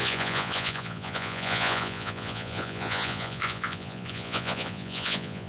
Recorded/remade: remade